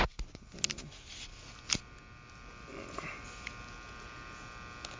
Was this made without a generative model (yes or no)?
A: yes